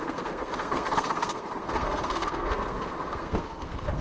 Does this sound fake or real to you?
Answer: fake